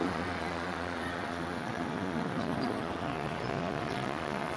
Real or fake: fake